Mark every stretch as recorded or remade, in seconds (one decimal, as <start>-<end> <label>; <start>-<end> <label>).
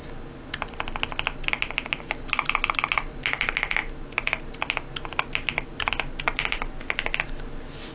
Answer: 0.0-7.9 recorded